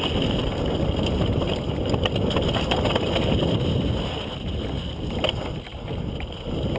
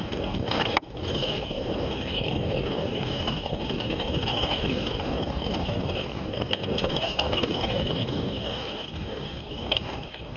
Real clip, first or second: first